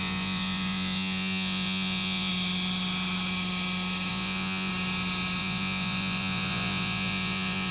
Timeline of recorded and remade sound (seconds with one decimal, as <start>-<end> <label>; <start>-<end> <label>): 0.0-2.3 remade; 2.3-4.1 recorded; 4.1-4.7 remade; 4.7-5.4 recorded; 5.4-7.7 remade